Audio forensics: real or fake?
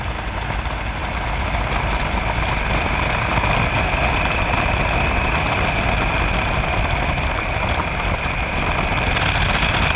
real